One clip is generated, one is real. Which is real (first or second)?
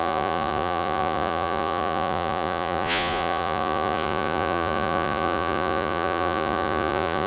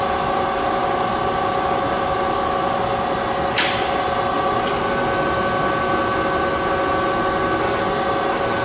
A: second